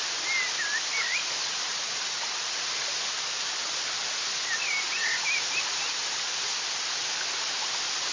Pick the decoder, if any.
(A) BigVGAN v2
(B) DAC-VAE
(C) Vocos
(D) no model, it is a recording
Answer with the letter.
D